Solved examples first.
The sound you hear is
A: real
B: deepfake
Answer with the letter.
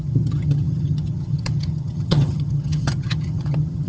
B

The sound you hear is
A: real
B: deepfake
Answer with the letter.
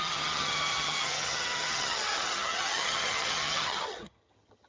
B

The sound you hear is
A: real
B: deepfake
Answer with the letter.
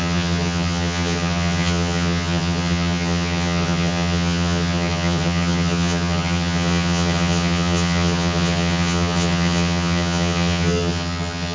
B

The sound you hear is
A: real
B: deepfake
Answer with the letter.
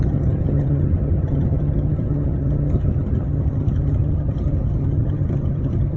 B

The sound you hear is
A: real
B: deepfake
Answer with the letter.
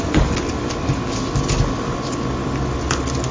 A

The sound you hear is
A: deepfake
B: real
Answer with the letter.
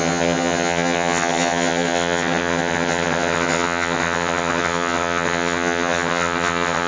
A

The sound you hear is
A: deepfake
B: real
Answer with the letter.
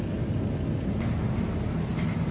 B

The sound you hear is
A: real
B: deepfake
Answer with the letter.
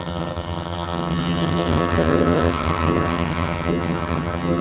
B